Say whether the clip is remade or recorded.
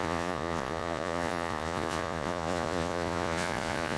remade